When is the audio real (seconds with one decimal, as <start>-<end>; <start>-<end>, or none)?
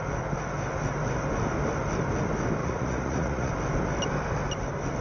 0.0-2.6; 3.5-5.0